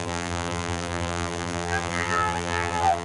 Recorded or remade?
remade